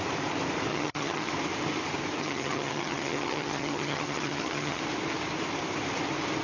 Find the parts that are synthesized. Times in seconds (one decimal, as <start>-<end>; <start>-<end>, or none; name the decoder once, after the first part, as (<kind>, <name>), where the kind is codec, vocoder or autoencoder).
0.7-1.3 (vocoder, HiFi-GAN); 2.2-4.8